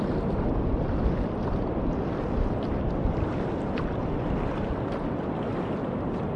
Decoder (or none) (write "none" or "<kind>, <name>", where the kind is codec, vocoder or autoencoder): none